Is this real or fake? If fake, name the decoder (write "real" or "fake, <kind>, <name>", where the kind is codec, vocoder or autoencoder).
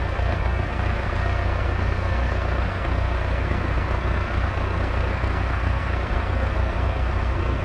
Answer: fake, codec, SNAC